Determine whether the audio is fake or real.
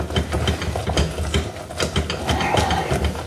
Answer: real